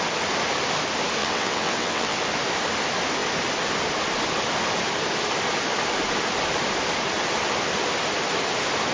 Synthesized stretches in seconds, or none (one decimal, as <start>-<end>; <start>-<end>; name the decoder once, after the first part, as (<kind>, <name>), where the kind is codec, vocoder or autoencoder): 1.2-2.2 (vocoder, WaveNeXt)